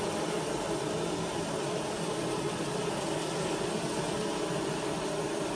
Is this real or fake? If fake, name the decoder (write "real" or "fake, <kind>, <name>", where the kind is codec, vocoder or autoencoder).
real